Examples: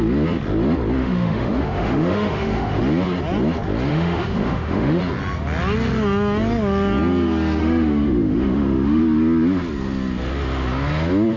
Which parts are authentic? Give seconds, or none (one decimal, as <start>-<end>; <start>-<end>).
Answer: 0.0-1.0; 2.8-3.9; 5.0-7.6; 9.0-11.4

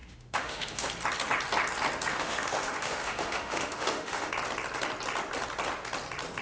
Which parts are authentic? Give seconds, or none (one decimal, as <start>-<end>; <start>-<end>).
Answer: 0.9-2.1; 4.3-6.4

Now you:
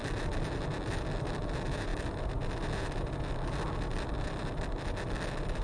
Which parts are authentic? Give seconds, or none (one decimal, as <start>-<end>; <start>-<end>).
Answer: 0.0-5.6

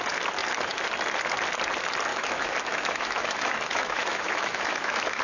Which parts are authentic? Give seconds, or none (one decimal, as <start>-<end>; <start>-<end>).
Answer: 0.0-2.1

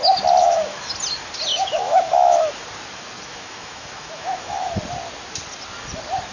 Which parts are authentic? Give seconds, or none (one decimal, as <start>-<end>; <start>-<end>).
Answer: 0.0-0.4; 0.9-1.5; 2.5-3.3; 4.7-6.3

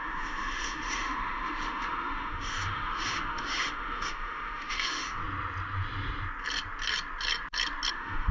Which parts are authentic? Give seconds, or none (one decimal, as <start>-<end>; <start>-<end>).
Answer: 5.2-7.9